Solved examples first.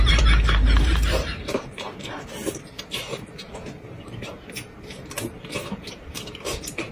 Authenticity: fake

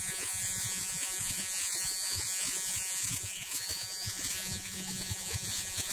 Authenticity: fake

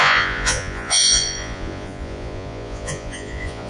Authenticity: fake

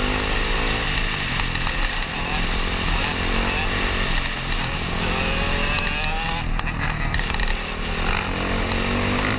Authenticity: real